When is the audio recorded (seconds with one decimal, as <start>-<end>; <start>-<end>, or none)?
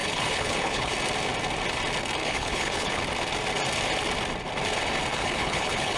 0.9-2.2; 3.0-5.1